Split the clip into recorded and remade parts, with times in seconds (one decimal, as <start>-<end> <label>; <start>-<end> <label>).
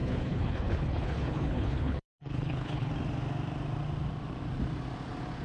0.0-2.9 remade; 2.9-5.4 recorded